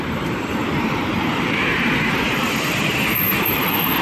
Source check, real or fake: fake